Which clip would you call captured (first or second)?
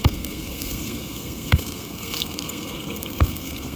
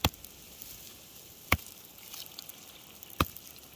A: second